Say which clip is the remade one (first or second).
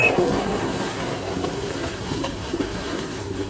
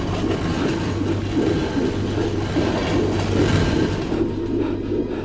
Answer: first